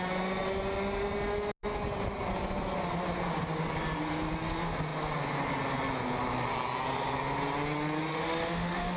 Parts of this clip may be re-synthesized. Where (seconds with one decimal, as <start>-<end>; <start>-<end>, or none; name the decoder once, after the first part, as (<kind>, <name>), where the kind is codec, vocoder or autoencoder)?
8.1-9.0 (autoencoder, DAC-VAE)